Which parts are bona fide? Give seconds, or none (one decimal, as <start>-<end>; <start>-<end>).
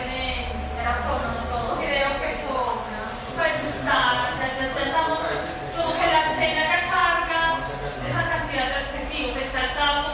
0.0-10.1